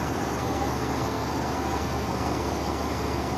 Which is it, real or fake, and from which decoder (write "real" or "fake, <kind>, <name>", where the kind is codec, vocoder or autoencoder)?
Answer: fake, codec, SNAC